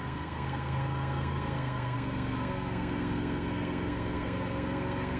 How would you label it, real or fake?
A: fake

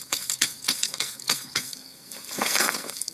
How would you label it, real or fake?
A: fake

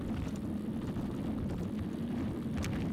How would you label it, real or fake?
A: real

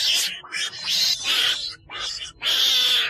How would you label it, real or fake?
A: real